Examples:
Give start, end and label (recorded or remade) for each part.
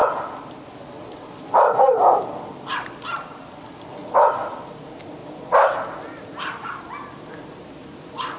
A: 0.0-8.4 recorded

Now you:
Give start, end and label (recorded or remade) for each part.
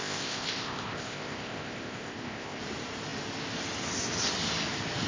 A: 0.0-2.6 remade; 2.6-5.1 recorded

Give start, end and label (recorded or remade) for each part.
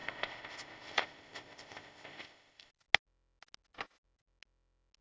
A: 0.0-2.7 remade; 2.7-5.0 recorded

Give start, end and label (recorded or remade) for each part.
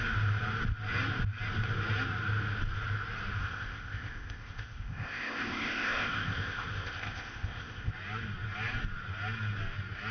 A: 0.0-3.4 recorded; 3.4-7.9 remade; 7.9-10.1 recorded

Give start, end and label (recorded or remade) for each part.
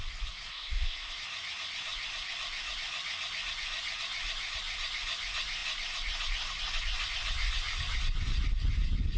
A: 0.0-0.5 recorded; 0.5-1.1 remade; 1.1-9.2 recorded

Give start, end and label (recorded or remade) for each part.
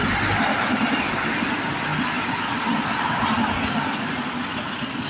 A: 0.0-5.1 recorded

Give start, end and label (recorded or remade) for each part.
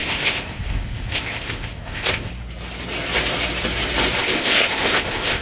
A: 0.0-2.3 remade; 2.3-4.2 recorded; 4.2-5.4 remade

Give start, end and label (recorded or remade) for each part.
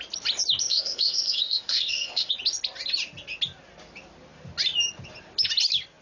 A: 0.0-0.6 recorded; 0.6-2.3 remade; 2.3-6.0 recorded